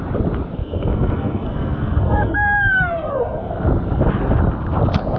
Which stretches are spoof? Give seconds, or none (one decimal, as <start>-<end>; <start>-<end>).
0.6-3.5